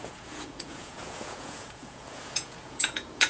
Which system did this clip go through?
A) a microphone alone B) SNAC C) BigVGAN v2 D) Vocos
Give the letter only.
D